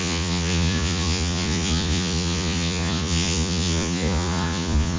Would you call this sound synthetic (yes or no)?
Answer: yes